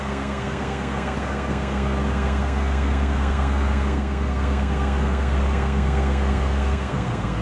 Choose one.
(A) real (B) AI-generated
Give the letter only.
B